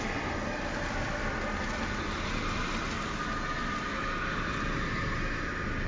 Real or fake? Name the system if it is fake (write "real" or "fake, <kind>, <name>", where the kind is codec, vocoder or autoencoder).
real